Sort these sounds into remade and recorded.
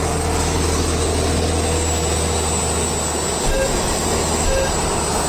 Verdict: recorded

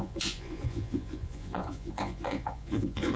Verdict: remade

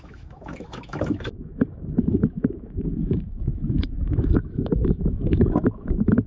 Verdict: remade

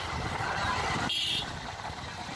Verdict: remade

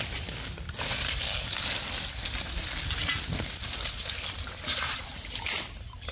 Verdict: recorded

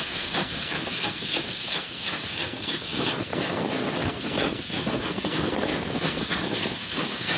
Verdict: remade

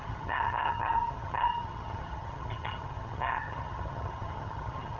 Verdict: remade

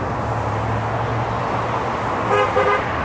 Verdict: recorded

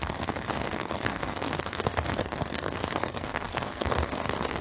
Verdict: remade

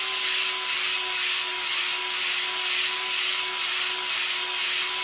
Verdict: recorded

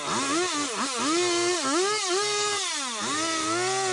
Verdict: recorded